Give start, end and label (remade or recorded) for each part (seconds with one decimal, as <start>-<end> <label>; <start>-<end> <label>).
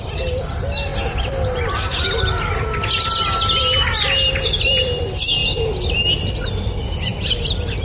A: 0.0-0.9 remade; 0.9-4.7 recorded; 4.7-5.4 remade; 5.4-6.5 recorded; 6.5-7.8 remade